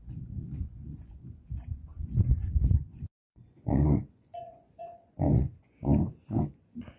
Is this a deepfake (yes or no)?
yes